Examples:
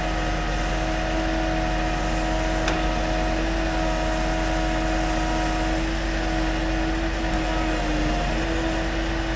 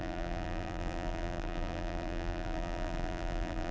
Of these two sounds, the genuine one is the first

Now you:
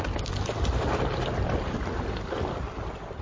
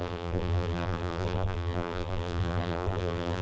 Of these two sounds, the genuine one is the first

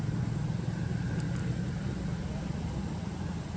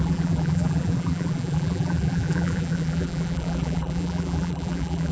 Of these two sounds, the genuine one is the first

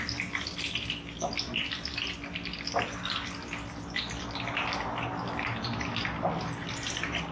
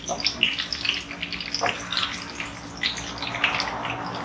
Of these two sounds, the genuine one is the second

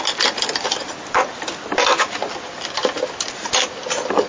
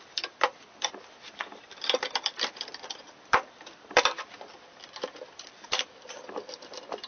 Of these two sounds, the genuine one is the first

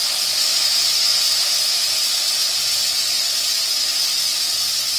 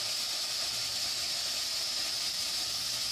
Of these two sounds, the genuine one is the first